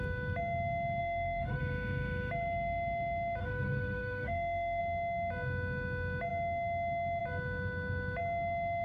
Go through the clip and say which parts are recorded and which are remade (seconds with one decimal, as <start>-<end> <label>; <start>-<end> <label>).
0.0-1.0 recorded; 1.0-1.6 remade; 1.6-3.4 recorded; 3.4-4.8 remade; 4.8-8.8 recorded